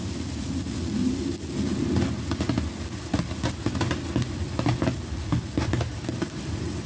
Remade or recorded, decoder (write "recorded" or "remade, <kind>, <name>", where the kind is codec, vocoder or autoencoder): recorded